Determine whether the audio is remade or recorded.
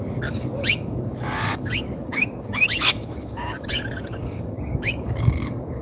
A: remade